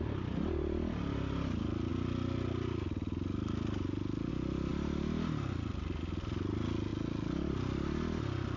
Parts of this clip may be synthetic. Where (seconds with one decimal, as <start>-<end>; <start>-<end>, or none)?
none